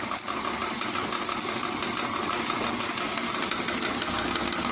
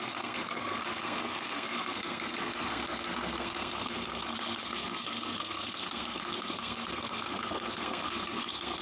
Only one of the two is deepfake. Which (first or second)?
second